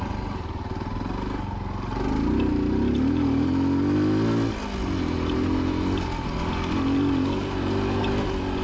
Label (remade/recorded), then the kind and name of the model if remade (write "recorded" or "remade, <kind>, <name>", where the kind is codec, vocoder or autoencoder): recorded